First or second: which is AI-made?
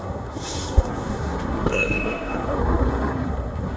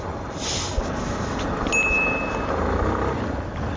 first